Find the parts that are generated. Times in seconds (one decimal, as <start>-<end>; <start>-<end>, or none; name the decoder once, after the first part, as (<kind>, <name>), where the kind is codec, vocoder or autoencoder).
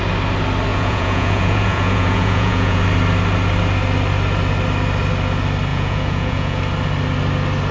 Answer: 0.7-2.8 (vocoder, Vocos); 5.7-6.6